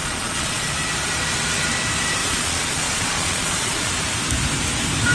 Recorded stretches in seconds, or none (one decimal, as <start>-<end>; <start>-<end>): 0.7-2.2; 3.9-5.1

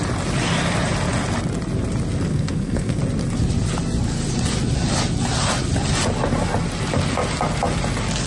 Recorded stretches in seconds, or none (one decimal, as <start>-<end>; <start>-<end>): 0.0-2.3; 3.0-8.3

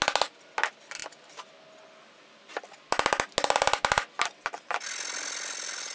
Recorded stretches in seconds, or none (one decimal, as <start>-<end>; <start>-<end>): 0.0-5.9

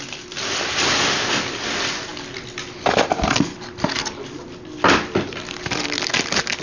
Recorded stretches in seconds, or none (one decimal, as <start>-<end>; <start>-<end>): 0.0-6.6

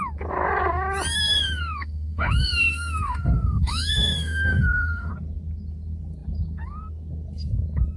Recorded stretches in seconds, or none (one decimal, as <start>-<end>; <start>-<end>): 0.0-1.3; 5.1-8.0

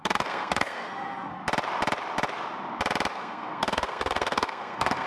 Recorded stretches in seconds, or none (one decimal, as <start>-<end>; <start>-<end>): 1.4-3.1

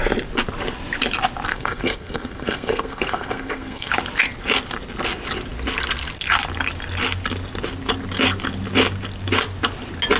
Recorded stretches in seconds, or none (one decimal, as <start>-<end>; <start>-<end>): 0.0-1.5; 3.9-10.2